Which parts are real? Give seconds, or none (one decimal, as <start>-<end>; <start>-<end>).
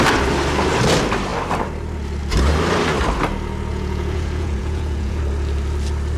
0.0-3.7; 5.2-6.2